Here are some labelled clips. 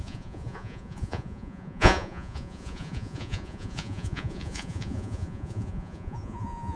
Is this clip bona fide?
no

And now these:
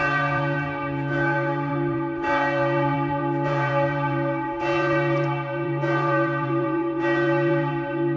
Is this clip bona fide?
no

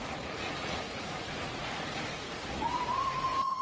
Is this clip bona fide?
no